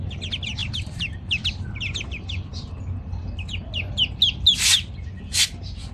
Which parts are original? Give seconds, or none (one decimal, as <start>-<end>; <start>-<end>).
0.0-0.6; 1.5-5.9